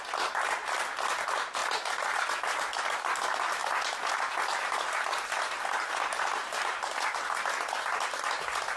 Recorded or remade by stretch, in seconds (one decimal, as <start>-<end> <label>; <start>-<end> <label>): 0.0-3.6 recorded; 3.6-5.5 remade; 5.5-8.8 recorded